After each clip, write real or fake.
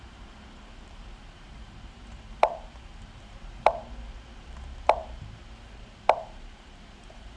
fake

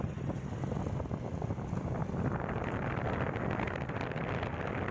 real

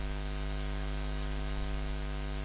real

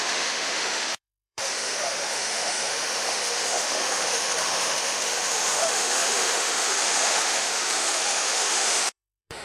fake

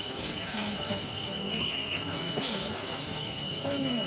fake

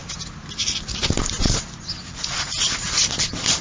real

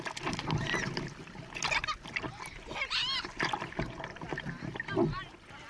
real